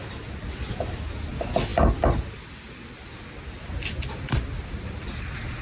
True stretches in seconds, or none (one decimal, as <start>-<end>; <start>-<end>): 0.0-5.6